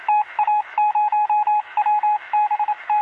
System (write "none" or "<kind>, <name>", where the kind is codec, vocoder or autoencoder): autoencoder, DAC-VAE